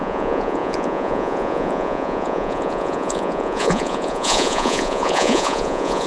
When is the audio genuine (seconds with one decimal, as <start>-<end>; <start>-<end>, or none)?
none